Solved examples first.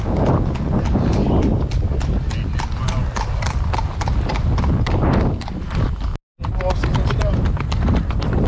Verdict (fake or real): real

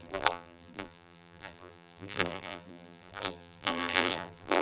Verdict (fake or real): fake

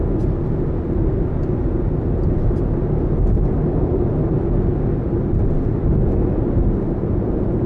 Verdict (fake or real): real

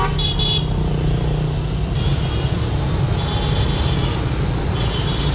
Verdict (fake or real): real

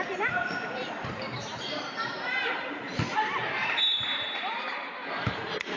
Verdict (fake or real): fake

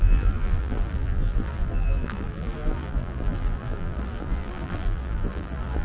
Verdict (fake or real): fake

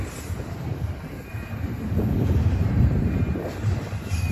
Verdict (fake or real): fake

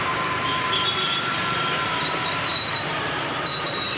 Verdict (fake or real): fake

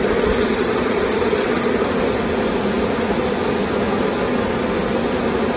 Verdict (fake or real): real